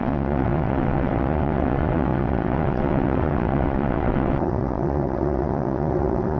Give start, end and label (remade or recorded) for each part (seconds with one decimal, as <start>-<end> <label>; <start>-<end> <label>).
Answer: 0.0-6.4 remade